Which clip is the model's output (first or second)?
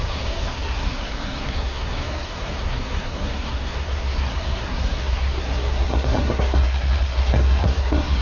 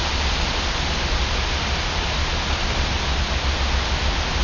first